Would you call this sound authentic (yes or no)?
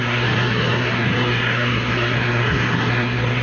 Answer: no